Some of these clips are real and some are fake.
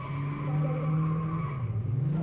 real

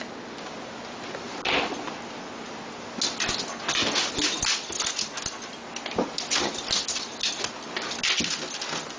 real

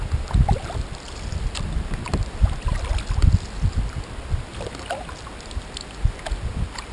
real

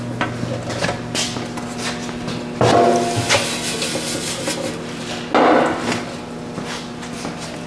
real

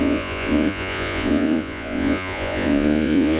fake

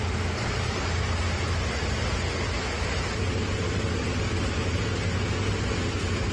real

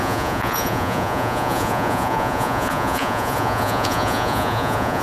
fake